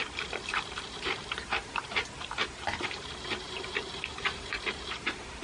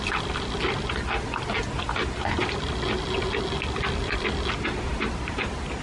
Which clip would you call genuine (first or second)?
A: second